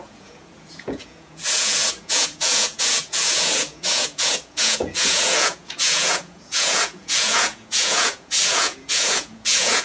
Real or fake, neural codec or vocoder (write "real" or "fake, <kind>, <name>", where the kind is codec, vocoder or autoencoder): fake, vocoder, Vocos